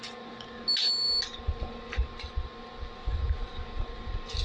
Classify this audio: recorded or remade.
recorded